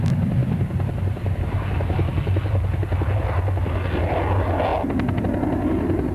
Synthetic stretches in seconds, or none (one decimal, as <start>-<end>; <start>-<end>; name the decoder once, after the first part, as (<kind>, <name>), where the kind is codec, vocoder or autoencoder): none